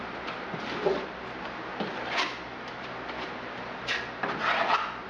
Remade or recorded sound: recorded